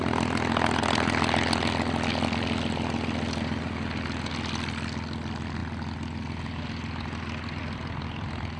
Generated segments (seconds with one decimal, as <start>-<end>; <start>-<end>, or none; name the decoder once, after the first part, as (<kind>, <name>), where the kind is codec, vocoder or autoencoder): none